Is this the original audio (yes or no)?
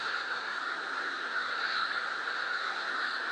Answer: no